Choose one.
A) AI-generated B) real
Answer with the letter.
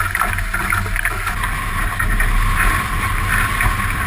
B